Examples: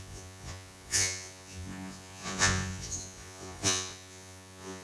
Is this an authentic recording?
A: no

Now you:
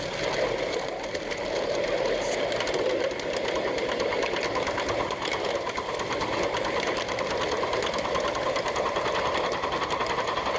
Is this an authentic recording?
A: yes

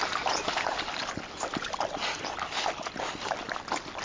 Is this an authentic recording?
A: yes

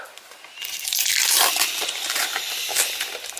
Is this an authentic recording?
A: yes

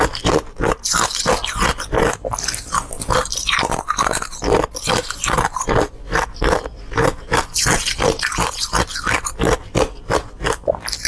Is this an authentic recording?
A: yes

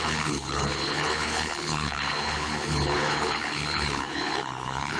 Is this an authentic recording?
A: no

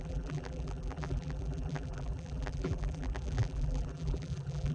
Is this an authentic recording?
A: no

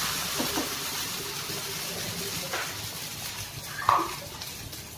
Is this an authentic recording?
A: yes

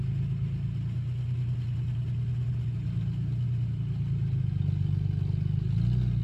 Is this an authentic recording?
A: yes